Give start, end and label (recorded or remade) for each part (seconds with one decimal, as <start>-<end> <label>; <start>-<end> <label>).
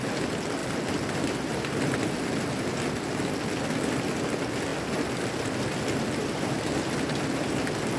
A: 0.0-8.0 recorded